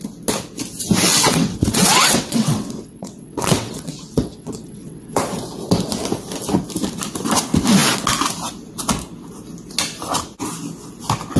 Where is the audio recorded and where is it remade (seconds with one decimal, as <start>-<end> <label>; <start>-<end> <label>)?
0.0-1.1 recorded; 1.1-5.2 remade; 5.2-11.4 recorded